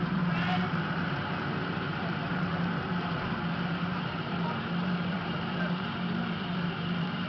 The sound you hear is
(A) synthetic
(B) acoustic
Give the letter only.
A